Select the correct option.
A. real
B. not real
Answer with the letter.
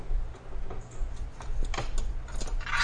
A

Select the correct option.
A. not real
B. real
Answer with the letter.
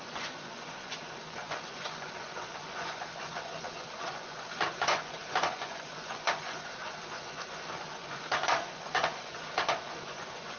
A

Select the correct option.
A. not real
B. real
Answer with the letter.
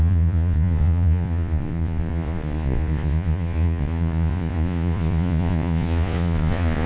A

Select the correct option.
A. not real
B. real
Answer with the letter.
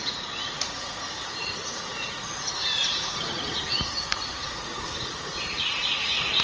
A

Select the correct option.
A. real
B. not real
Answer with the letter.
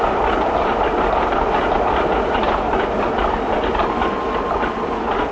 A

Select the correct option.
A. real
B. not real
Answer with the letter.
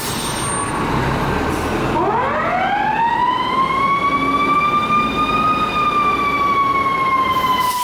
A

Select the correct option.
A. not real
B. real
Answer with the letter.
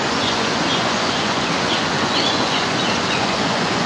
A